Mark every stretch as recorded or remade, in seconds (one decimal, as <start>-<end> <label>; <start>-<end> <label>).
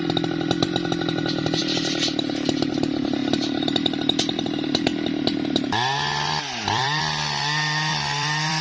0.0-1.6 recorded; 1.6-2.7 remade; 2.7-3.2 recorded; 3.2-7.0 remade; 7.0-7.9 recorded; 7.9-8.6 remade